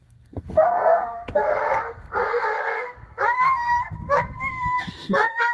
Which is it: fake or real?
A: fake